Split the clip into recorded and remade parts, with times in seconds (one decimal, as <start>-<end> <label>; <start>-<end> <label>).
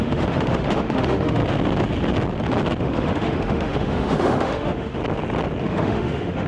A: 0.0-1.4 remade; 1.4-2.8 recorded; 2.8-5.0 remade; 5.0-5.6 recorded; 5.6-6.5 remade